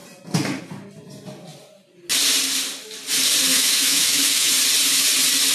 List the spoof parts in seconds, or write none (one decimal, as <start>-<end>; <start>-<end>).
3.5-4.5